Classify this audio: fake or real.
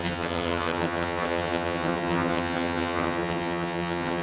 fake